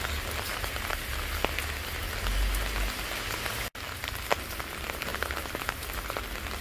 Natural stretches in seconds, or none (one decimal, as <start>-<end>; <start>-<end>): 0.0-6.6